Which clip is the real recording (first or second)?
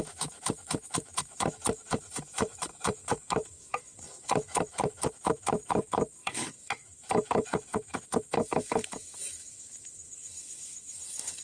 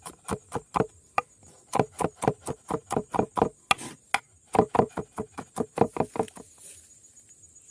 second